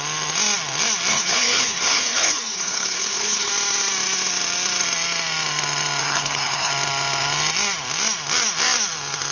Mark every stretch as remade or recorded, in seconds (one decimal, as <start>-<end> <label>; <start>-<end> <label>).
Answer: 0.0-1.1 recorded; 1.1-3.5 remade; 3.5-6.0 recorded; 6.0-6.7 remade; 6.7-9.3 recorded